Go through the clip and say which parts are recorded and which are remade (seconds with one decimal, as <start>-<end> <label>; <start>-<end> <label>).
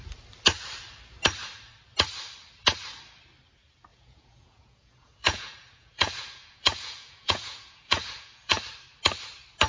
0.0-3.9 recorded; 3.9-8.6 remade; 8.6-9.7 recorded